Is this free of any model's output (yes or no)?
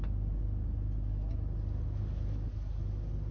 yes